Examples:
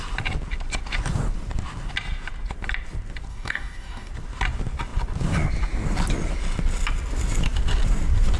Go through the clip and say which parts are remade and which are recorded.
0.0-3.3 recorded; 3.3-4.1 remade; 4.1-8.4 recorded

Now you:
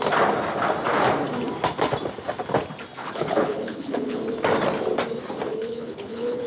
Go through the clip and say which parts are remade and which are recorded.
0.0-3.0 recorded; 3.0-4.2 remade; 4.2-5.5 recorded; 5.5-6.5 remade

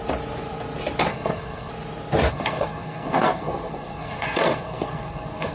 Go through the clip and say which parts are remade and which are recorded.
0.0-1.1 recorded; 1.1-1.7 remade; 1.7-2.3 recorded; 2.3-5.5 remade

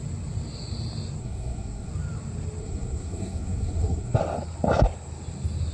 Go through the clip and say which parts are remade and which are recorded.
0.0-1.2 recorded; 1.2-1.9 remade; 1.9-2.6 recorded; 2.6-4.2 remade; 4.2-5.7 recorded